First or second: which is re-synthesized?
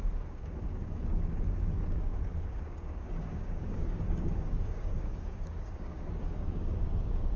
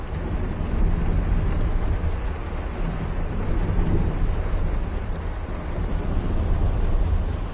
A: first